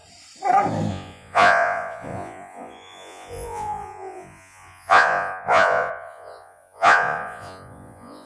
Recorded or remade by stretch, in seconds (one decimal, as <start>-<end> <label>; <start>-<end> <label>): 0.0-0.9 recorded; 0.9-8.3 remade